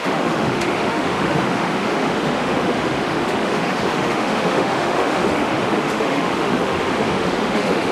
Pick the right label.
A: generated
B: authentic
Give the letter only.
A